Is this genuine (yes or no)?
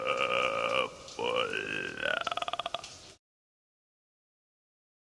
yes